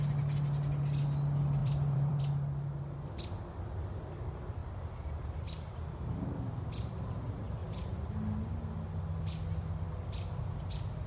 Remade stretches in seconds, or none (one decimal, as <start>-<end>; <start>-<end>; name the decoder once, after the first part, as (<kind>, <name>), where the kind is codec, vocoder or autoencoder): 1.6-2.2 (vocoder, BigVGAN v2)